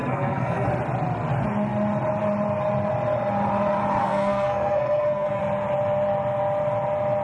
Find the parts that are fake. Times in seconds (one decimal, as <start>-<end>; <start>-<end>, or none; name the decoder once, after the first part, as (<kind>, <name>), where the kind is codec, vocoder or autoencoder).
0.0-0.7 (codec, SNAC); 4.0-5.4